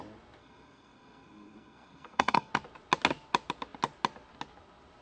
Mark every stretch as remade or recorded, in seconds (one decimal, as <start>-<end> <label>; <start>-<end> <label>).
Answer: 0.0-0.4 recorded; 0.4-2.5 remade; 2.5-5.0 recorded